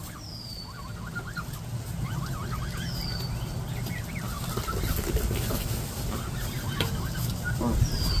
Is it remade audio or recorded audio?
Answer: recorded